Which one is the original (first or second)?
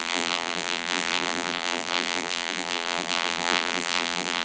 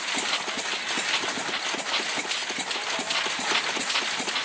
second